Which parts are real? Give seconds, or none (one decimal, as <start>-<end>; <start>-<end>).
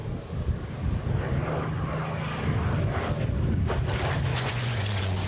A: 0.0-4.3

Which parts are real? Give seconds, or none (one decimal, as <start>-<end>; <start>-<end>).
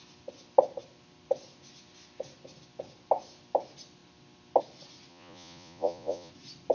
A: 0.0-5.1; 6.3-6.7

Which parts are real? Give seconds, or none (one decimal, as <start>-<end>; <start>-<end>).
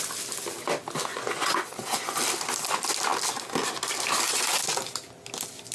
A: 0.0-1.1; 2.2-5.7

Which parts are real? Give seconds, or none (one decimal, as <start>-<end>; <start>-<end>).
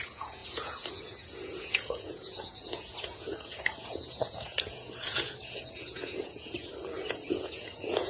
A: 6.7-7.3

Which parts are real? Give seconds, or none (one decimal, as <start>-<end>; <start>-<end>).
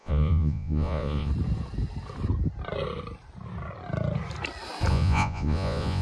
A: 1.3-4.9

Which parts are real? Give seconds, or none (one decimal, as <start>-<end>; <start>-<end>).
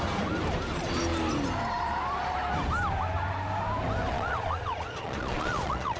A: 0.0-4.1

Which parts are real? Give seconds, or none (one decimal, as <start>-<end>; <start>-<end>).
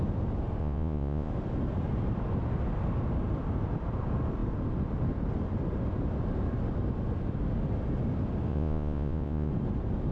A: 0.0-0.6; 1.3-8.5; 9.5-10.1